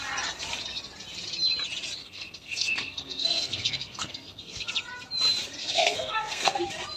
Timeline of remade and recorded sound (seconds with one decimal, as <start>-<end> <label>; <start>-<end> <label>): 0.0-2.0 recorded; 2.0-4.7 remade; 4.7-5.6 recorded; 5.6-6.6 remade; 6.6-7.0 recorded

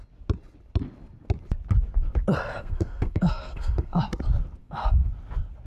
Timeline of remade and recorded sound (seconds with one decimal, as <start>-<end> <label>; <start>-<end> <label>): 0.0-2.6 recorded; 2.6-4.0 remade; 4.0-4.6 recorded; 4.6-5.1 remade; 5.1-5.7 recorded

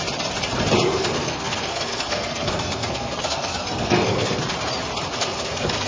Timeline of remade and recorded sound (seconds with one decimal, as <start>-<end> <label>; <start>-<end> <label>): 0.0-0.9 recorded; 0.9-4.4 remade; 4.4-5.2 recorded; 5.2-5.9 remade

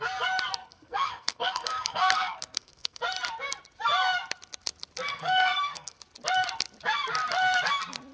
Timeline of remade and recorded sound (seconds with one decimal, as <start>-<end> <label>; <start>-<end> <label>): 0.0-0.6 recorded; 0.6-3.0 remade; 3.0-5.1 recorded; 5.1-6.0 remade; 6.0-8.1 recorded